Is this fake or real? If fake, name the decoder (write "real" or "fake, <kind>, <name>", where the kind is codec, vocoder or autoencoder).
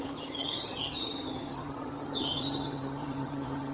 fake, vocoder, HiFi-GAN